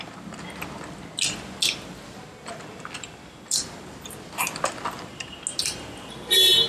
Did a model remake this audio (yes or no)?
no